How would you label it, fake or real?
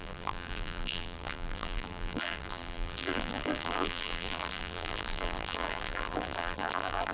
fake